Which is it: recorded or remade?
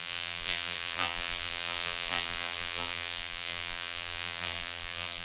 remade